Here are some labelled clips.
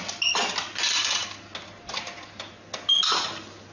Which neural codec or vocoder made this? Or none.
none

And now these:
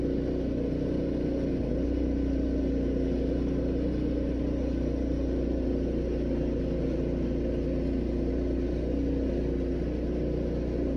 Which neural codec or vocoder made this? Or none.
none